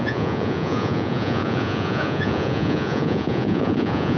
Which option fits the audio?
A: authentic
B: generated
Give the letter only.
B